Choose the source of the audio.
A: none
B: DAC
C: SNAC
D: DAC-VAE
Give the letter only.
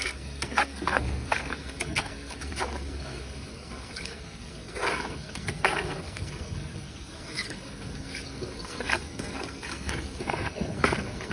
C